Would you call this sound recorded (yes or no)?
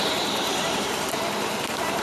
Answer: no